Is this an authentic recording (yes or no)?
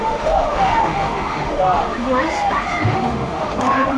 no